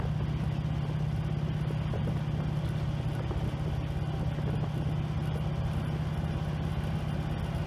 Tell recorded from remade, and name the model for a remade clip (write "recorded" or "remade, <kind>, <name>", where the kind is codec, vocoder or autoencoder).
recorded